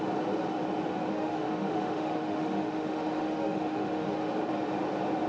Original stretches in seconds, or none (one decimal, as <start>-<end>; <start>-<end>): 0.0-1.1; 4.3-5.3